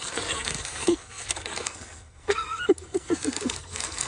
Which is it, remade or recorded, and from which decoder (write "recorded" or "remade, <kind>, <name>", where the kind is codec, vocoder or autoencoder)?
remade, codec, SNAC